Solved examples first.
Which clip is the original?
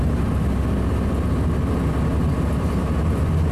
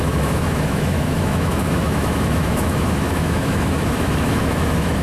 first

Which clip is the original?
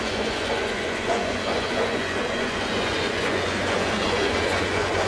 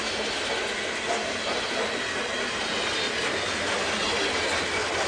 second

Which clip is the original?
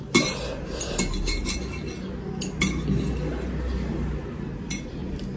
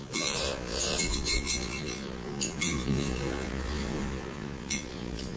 first